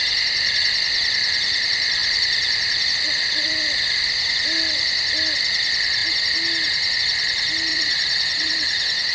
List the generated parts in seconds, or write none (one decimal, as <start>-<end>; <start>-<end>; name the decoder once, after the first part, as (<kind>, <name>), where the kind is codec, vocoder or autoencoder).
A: 7.7-9.1 (vocoder, WaveNeXt)